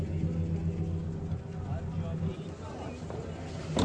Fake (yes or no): no